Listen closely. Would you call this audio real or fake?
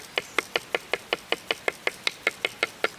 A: real